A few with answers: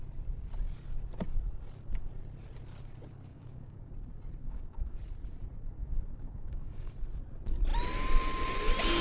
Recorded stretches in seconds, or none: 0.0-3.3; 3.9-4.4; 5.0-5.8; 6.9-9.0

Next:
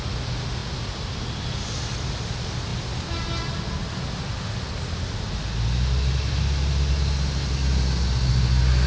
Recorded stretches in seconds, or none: 0.0-8.9

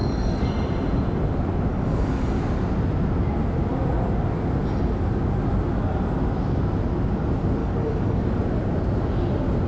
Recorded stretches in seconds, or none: 0.5-1.7; 2.4-7.6; 8.4-9.7